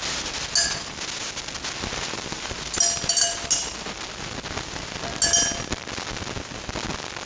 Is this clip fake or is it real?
real